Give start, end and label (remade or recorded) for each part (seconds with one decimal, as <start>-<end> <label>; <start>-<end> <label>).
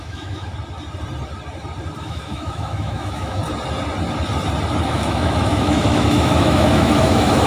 0.0-0.5 remade; 0.5-2.0 recorded; 2.0-3.4 remade; 3.4-4.9 recorded; 4.9-7.5 remade